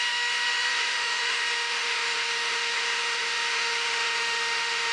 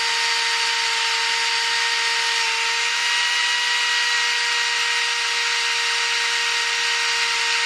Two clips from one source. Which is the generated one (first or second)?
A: first